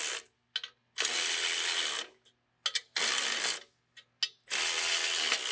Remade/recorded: recorded